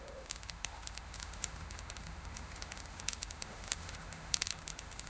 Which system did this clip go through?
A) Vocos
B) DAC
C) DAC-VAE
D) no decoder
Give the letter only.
C